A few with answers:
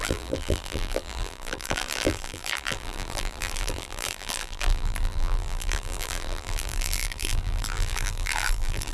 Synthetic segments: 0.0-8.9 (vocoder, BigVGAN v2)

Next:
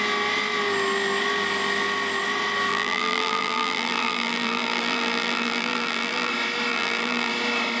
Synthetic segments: 2.7-6.3 (vocoder, BigVGAN v2); 6.7-7.3

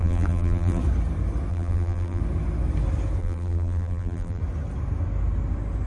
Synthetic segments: 0.0-0.8 (vocoder, BigVGAN v2); 1.5-2.2; 3.2-4.4